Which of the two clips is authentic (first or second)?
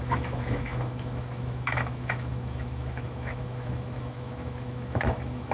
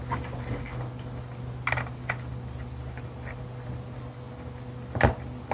second